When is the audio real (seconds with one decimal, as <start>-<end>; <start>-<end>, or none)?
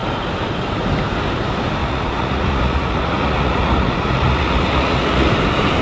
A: 0.0-1.8; 5.3-5.8